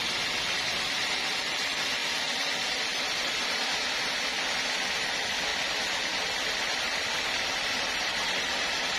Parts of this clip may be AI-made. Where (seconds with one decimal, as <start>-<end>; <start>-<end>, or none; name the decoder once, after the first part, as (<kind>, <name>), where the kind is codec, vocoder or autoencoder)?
0.0-2.0 (vocoder, BigVGAN v2); 5.0-5.5; 7.5-9.0